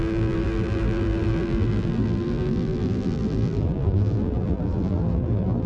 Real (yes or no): no